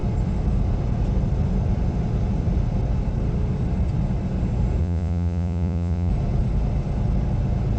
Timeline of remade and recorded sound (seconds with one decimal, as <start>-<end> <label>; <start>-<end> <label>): 0.0-4.8 recorded; 4.8-6.1 remade; 6.1-7.8 recorded